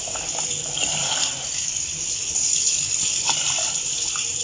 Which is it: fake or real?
real